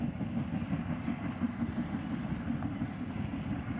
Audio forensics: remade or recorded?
recorded